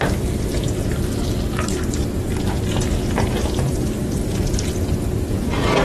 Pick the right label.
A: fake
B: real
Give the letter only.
B